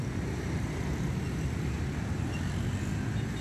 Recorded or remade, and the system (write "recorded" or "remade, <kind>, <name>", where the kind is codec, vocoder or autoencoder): recorded